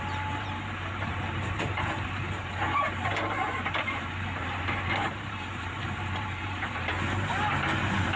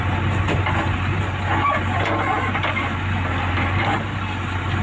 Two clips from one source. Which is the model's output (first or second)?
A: first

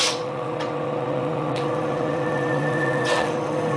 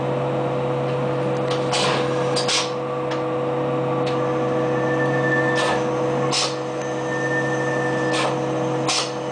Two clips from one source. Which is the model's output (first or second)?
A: first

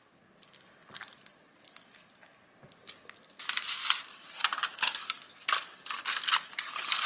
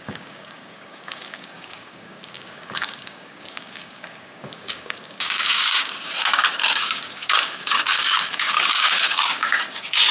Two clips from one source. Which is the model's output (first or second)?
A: second